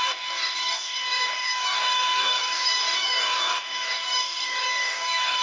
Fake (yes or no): yes